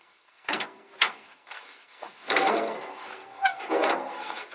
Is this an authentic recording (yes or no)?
no